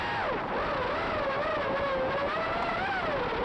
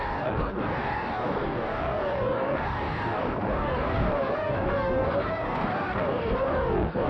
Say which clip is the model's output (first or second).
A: second